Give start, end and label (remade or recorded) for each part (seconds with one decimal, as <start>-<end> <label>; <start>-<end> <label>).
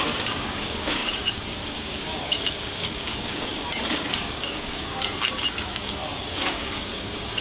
0.0-7.4 remade